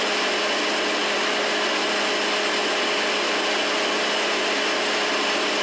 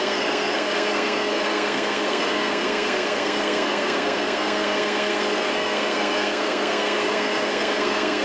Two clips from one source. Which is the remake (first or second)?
second